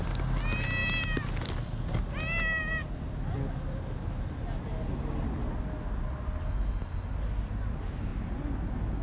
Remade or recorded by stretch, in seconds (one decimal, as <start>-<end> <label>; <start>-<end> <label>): 0.0-9.0 recorded

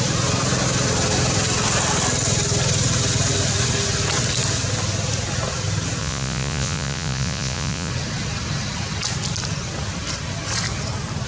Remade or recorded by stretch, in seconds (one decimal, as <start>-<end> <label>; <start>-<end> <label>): 0.0-6.0 recorded; 6.0-7.9 remade; 7.9-11.3 recorded

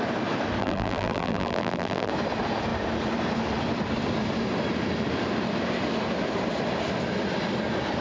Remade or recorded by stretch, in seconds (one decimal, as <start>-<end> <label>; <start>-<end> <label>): 0.0-0.6 recorded; 0.6-2.1 remade; 2.1-8.0 recorded

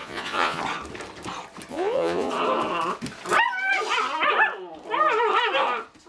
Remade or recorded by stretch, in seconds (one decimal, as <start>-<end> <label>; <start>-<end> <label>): 0.0-0.6 remade; 0.6-1.7 recorded; 1.7-2.3 remade; 2.3-6.1 recorded